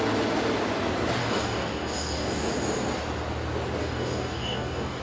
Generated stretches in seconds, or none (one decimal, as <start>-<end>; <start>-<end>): 1.2-2.5; 3.8-5.0